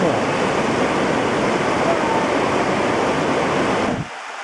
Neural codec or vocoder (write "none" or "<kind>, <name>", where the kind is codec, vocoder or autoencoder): none